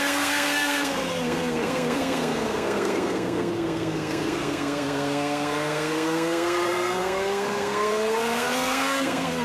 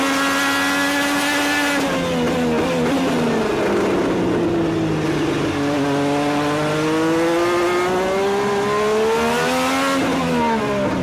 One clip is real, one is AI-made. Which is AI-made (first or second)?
first